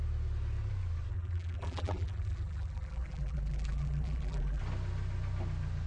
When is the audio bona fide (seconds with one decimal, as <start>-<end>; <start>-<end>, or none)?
0.0-1.1; 4.6-5.9